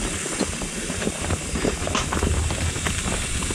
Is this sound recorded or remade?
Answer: recorded